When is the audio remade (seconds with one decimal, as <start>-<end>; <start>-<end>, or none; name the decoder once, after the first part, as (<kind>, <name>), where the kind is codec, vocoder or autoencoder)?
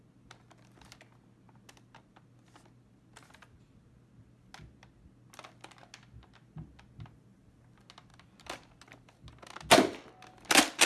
none